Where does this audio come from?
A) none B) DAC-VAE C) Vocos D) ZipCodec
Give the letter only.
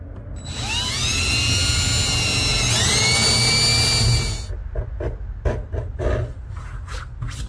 A